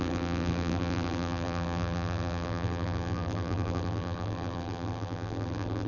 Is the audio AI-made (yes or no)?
yes